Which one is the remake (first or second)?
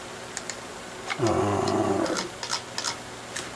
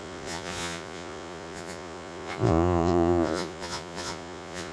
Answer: second